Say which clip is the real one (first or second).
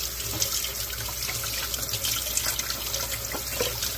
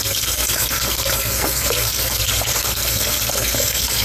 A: first